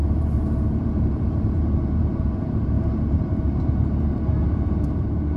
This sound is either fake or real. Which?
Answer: fake